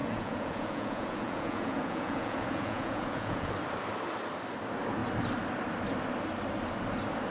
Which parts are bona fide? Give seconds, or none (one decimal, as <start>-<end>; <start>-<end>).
3.5-7.3